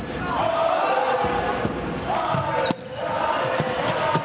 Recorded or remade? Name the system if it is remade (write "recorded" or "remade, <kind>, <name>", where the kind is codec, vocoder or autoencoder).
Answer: recorded